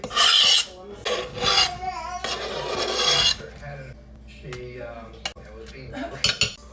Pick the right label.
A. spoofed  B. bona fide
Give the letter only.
B